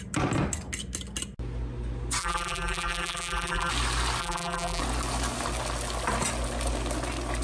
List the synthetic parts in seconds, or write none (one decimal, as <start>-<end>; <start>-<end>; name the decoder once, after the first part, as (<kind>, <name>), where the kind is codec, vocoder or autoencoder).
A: 2.2-3.7 (vocoder, BigVGAN v2); 4.2-4.8